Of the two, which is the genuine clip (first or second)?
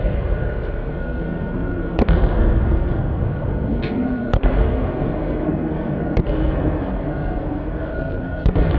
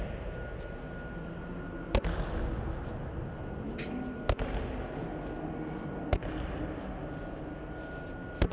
second